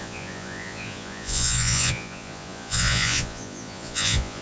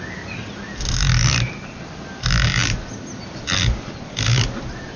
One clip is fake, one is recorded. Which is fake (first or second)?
first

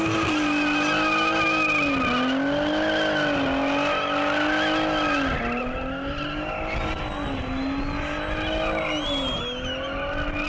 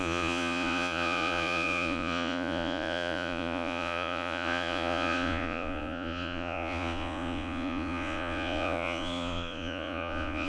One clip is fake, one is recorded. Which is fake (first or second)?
second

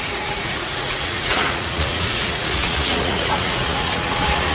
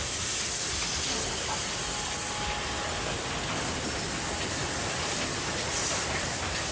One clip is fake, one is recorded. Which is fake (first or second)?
first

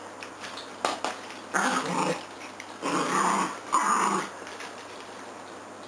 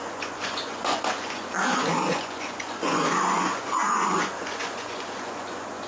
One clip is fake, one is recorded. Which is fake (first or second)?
second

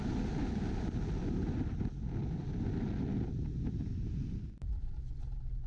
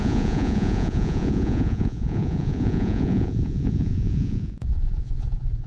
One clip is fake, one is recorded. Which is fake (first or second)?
second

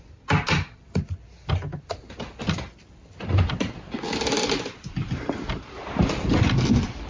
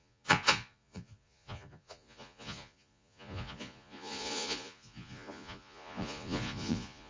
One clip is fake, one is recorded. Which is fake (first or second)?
second